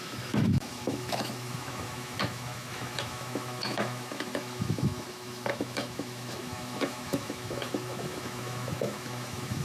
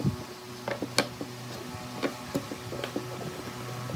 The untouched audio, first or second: second